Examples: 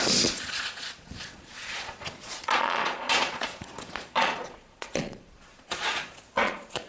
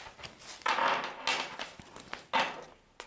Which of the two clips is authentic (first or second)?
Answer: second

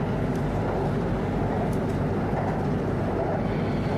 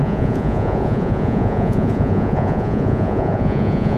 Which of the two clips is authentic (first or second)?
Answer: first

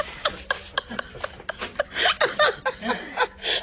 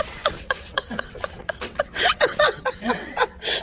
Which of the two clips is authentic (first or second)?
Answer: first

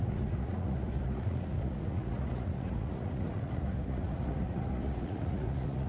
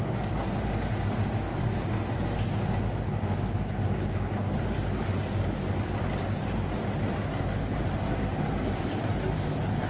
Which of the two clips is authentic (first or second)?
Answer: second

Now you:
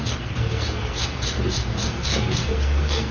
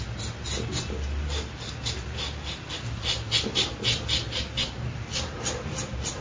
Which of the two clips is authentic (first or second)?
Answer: second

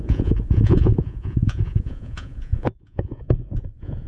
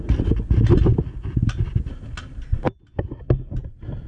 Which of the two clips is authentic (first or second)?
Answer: second